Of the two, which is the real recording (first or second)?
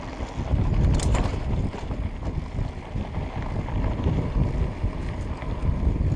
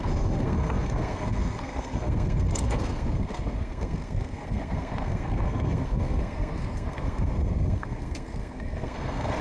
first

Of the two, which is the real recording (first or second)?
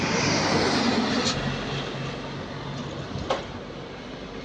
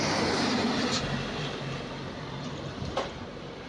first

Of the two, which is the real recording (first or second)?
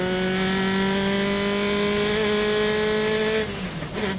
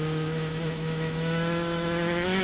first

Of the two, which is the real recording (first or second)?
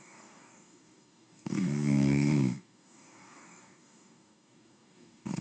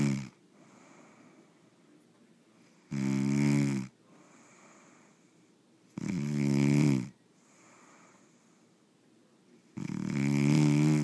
second